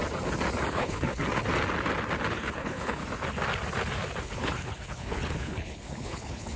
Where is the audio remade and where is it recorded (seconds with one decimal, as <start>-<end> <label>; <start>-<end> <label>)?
0.0-0.7 recorded; 0.7-1.2 remade; 1.2-2.3 recorded; 2.3-3.0 remade; 3.0-4.2 recorded; 4.2-6.6 remade